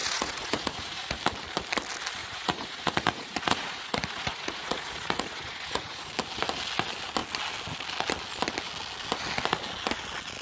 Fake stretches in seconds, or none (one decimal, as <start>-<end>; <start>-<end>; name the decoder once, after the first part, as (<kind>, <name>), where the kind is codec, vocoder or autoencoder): 0.0-1.2 (vocoder, Vocos); 2.2-6.1